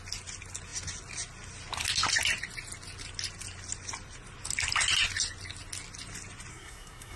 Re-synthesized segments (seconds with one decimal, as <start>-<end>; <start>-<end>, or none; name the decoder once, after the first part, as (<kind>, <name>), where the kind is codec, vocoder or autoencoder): 6.5-7.2 (codec, SNAC)